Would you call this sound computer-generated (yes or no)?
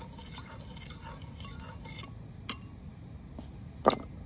no